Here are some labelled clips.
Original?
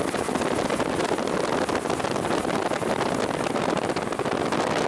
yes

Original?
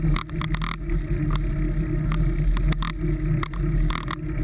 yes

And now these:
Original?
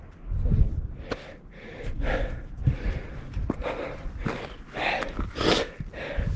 yes